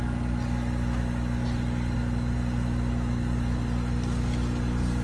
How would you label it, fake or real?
real